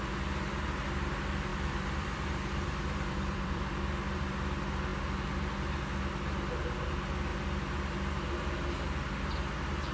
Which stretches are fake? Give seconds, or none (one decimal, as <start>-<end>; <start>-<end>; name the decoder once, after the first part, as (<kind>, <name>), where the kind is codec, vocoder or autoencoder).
1.5-4.3 (vocoder, BigVGAN v2)